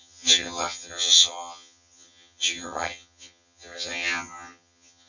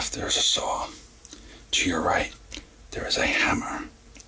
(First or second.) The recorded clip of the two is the second